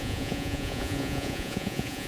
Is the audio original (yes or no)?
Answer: no